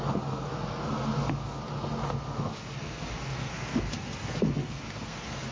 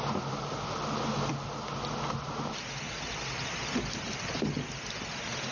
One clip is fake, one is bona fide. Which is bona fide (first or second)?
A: second